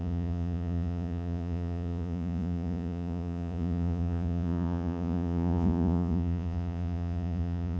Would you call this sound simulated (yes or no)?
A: yes